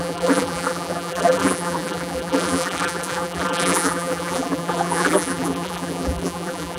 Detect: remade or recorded remade